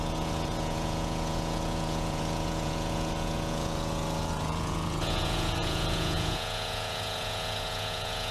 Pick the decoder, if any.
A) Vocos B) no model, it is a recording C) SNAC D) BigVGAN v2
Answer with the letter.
A